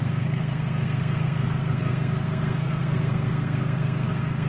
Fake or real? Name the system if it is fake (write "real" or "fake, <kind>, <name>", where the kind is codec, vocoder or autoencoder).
fake, codec, SNAC